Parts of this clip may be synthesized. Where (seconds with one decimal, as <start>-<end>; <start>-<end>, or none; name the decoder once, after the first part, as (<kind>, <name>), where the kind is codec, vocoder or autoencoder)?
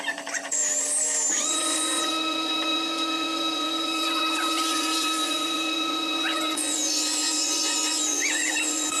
0.0-0.6 (vocoder, Vocos); 1.3-9.0